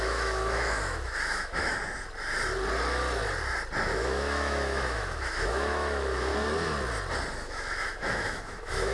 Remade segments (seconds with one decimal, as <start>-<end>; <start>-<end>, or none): 0.0-1.8; 3.8-6.3; 7.3-8.9